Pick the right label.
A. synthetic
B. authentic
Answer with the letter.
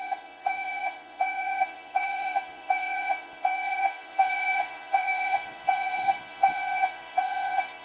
A